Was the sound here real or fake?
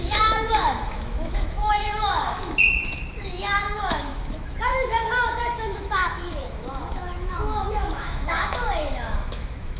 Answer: fake